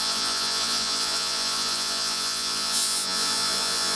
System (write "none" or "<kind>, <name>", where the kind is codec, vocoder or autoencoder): vocoder, Vocos